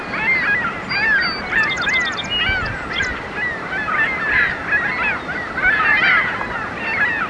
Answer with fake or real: real